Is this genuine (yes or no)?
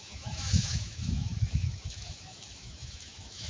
no